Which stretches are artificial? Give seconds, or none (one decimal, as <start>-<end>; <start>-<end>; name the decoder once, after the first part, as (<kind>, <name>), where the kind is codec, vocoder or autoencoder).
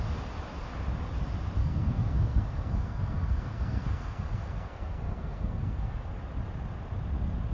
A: 1.6-6.1 (codec, SNAC)